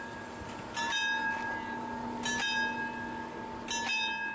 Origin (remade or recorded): recorded